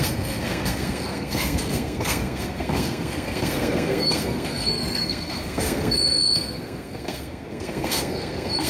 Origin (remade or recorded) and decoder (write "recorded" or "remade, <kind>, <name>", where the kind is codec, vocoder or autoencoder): remade, codec, SNAC